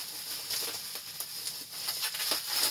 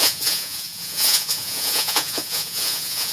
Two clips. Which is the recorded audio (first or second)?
first